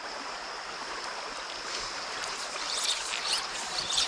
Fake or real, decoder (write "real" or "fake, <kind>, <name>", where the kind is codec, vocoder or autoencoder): real